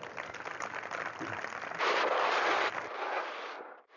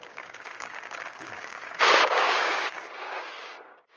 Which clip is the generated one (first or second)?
second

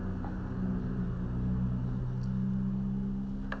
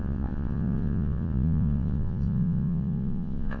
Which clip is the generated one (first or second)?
second